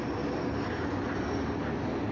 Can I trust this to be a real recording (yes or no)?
yes